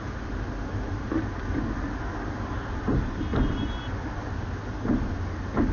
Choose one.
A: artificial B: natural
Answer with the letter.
B